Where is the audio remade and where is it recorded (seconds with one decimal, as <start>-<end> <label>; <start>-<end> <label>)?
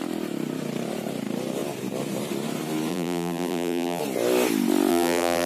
0.0-2.9 recorded; 2.9-4.0 remade; 4.0-4.9 recorded; 4.9-5.5 remade